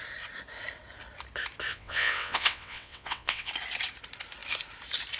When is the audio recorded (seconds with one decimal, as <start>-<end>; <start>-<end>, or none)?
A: 0.0-1.7; 3.5-5.2